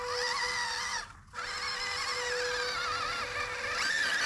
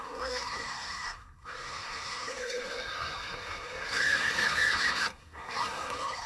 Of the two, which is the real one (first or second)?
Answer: first